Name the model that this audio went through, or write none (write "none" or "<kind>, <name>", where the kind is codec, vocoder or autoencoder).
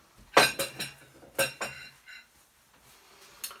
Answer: none